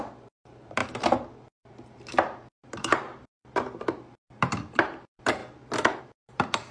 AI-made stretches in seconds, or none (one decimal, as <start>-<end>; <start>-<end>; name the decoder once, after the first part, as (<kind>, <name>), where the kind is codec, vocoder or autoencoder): 0.0-0.8 (vocoder, BigVGAN v2); 1.7-3.4; 4.1-5.4; 6.0-6.7